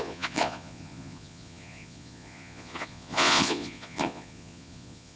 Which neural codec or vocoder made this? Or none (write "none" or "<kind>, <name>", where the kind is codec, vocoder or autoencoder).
vocoder, Vocos